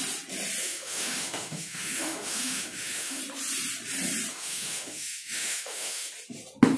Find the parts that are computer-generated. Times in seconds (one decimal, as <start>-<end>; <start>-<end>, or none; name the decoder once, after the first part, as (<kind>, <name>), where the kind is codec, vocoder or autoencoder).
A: 0.6-3.2 (autoencoder, DAC-VAE); 4.3-6.1